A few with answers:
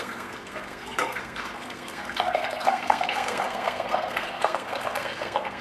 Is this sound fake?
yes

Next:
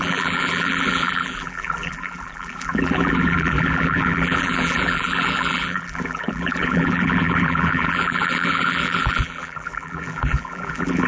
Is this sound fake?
yes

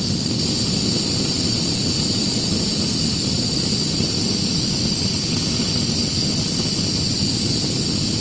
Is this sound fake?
no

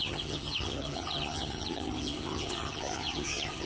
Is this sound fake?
yes